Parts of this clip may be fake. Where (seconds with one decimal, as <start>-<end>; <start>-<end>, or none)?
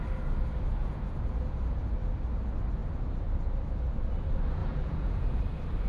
0.8-1.9; 4.6-5.4